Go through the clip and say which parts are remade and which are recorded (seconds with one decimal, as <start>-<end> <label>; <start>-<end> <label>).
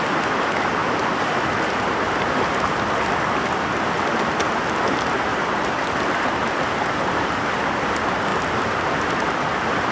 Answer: 0.0-5.3 recorded; 5.3-5.8 remade; 5.8-9.9 recorded